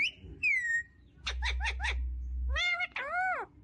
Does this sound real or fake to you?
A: real